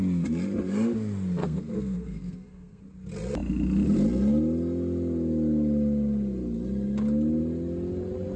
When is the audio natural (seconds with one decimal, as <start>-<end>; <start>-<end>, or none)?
0.0-1.4; 2.8-8.4